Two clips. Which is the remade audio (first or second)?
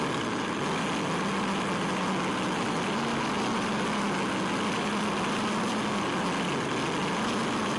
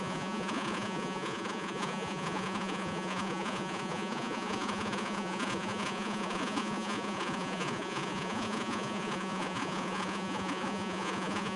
second